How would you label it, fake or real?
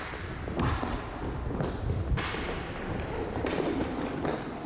real